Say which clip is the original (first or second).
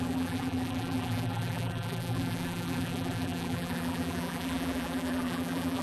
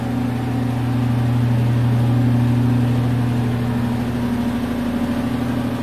second